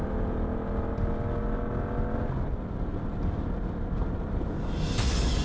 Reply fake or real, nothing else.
real